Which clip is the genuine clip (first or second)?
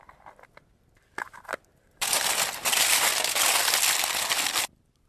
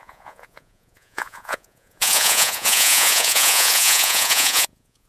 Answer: first